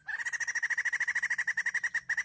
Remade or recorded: recorded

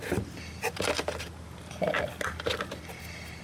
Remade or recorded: recorded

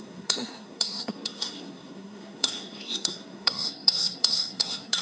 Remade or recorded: remade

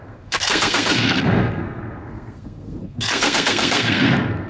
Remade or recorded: remade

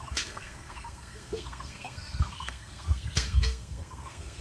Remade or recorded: remade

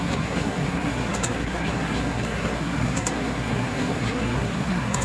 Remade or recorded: remade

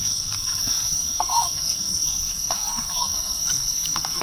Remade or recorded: remade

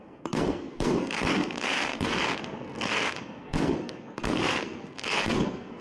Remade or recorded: remade